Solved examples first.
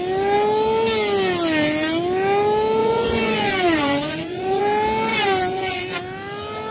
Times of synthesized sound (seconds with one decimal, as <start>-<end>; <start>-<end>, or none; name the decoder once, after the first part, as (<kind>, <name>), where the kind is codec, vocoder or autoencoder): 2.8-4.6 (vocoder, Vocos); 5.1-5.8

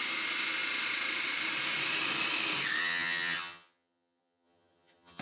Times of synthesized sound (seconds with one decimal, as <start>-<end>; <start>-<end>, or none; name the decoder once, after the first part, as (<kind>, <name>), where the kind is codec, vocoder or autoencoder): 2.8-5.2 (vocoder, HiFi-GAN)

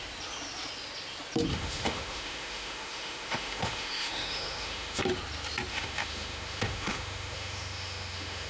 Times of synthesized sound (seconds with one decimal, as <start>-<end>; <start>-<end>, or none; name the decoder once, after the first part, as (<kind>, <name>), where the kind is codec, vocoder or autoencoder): 1.5-5.0 (autoencoder, DAC-VAE); 5.7-8.5

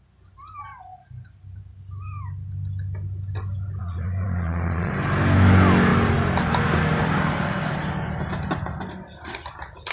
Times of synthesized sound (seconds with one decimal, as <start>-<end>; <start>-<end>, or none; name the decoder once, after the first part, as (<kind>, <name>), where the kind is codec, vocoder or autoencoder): 3.8-4.9 (vocoder, Vocos)

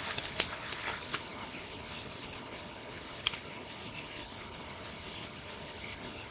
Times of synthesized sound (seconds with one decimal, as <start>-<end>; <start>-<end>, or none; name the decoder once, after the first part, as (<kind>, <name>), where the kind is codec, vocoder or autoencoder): 0.0-6.3 (codec, HILCodec)